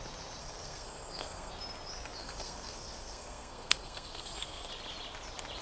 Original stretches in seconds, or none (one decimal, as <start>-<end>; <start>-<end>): 0.0-0.4; 1.5-2.2; 4.7-5.6

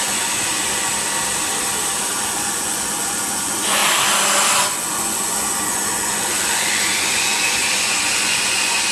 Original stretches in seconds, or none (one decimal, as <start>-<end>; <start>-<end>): 0.9-2.0; 3.8-4.6